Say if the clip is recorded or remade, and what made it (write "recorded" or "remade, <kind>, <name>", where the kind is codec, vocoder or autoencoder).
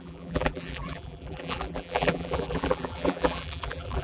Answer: remade, vocoder, BigVGAN v2